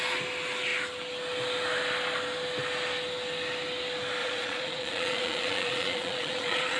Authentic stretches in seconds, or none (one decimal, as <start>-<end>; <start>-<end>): 0.0-4.2